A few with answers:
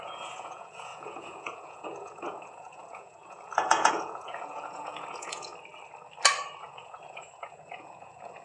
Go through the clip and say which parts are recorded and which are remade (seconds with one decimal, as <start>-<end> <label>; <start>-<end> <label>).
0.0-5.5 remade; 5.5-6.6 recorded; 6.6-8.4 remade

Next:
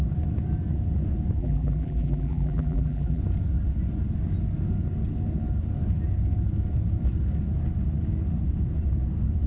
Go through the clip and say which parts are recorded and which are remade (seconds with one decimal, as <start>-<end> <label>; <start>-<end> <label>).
0.0-1.4 recorded; 1.4-3.2 remade; 3.2-9.5 recorded

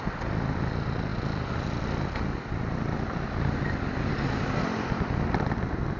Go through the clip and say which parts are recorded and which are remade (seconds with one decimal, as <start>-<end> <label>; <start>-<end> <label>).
0.0-6.0 recorded